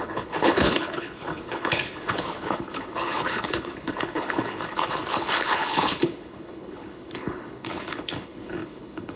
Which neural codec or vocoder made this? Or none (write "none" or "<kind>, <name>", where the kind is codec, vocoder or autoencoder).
codec, HILCodec